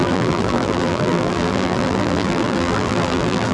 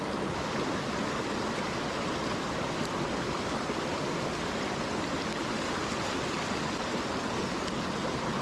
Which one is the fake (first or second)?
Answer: first